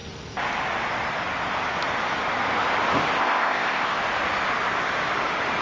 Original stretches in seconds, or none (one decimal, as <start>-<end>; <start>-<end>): 0.0-3.2; 4.0-5.6

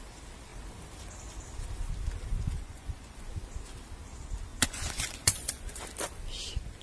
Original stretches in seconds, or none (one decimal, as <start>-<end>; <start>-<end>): 0.0-2.3; 3.3-4.5; 5.8-6.8

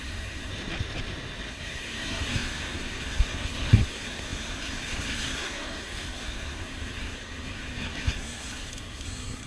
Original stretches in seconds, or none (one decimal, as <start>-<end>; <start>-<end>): 0.5-1.5

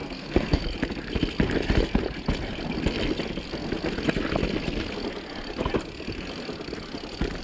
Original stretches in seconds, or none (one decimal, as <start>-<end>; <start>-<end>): 0.6-7.4